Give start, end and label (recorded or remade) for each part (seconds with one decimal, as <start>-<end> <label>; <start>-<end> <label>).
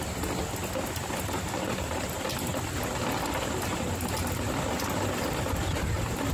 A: 0.0-6.3 recorded